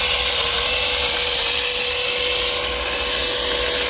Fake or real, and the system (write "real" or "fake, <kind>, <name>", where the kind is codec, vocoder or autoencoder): real